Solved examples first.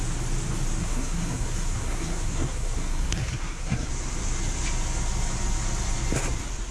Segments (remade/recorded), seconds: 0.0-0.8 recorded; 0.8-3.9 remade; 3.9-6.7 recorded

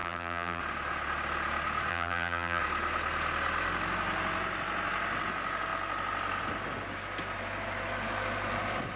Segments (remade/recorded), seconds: 0.0-0.6 remade; 0.6-1.9 recorded; 1.9-2.6 remade; 2.6-9.0 recorded

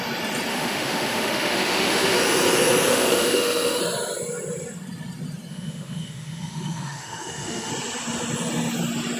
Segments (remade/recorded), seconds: 0.0-0.5 recorded; 0.5-2.2 remade; 2.2-2.9 recorded; 2.9-3.8 remade; 3.8-5.5 recorded; 5.5-7.7 remade; 7.7-9.2 recorded

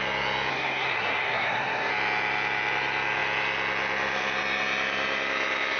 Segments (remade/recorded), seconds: 0.0-0.5 recorded; 0.5-1.9 remade; 1.9-5.8 recorded